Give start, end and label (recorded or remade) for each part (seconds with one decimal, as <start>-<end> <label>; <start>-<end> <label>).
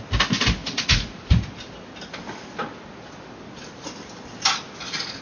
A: 0.0-0.6 recorded; 0.6-1.4 remade; 1.4-5.2 recorded